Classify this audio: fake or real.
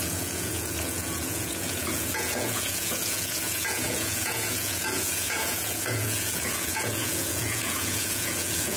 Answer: fake